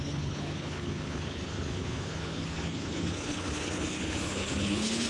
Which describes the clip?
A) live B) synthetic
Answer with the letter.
B